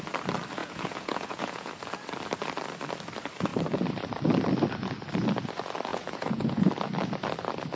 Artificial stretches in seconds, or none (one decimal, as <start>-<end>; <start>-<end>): 0.6-1.7; 5.9-6.7